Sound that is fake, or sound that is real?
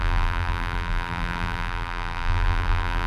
fake